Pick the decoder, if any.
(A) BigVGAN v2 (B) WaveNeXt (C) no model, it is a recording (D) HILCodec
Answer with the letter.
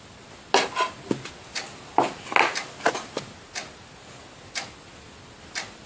C